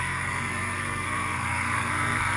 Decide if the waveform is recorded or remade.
remade